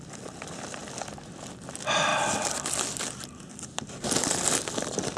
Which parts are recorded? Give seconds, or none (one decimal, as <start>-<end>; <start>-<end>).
0.0-5.2